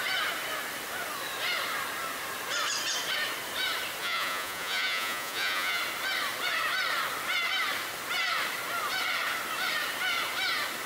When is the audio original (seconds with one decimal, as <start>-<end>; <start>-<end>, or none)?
0.0-4.0; 5.8-10.9

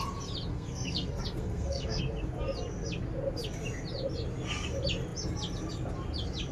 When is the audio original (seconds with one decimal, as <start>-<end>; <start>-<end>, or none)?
0.0-0.5; 2.0-6.5

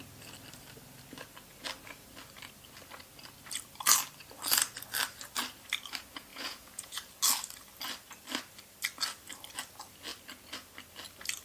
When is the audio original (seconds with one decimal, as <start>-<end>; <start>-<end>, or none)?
0.0-6.3; 7.1-11.4

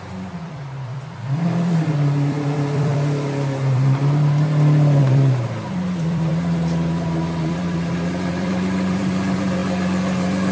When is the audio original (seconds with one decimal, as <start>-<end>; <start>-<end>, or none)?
6.3-7.4; 9.6-10.5

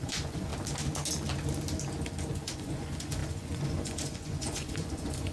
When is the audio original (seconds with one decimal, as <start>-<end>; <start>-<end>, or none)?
0.5-2.3

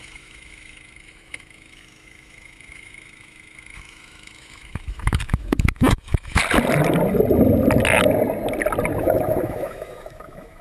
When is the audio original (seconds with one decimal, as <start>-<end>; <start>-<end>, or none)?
6.4-9.0

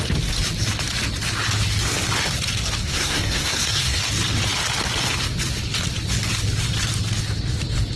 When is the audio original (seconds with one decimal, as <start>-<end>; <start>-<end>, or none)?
0.0-2.8; 4.0-8.0